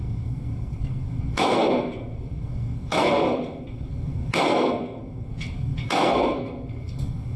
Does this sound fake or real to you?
fake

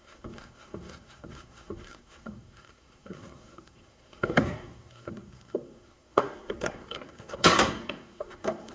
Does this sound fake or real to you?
fake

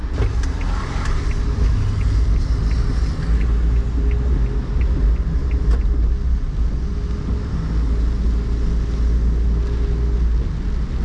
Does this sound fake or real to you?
real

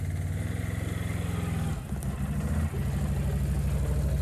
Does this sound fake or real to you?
real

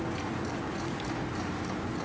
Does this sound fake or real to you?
real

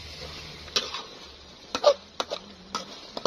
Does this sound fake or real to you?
real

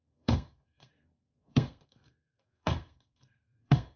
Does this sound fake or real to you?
fake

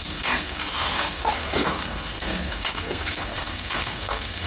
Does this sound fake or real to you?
fake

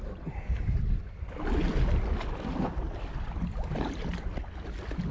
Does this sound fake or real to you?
real